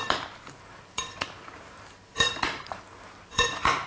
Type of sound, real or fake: fake